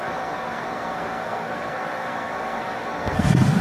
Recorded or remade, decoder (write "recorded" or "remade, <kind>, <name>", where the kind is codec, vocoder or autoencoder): remade, codec, SNAC